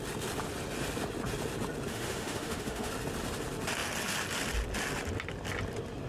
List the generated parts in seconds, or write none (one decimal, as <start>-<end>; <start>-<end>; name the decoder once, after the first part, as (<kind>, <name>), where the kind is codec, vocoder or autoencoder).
1.9-2.9 (autoencoder, DAC-VAE)